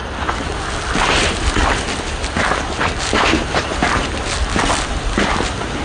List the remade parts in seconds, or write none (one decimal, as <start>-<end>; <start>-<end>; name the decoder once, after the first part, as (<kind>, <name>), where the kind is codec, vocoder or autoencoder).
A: none